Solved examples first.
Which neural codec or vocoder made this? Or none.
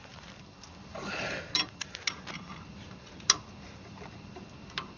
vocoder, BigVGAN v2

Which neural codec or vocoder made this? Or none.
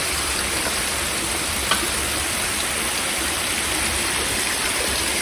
vocoder, BigVGAN v2